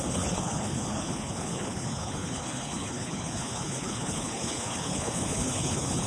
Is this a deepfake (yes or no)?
yes